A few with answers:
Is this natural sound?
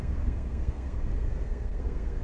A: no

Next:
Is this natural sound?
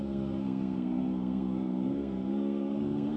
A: no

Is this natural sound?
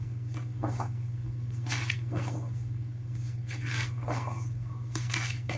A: no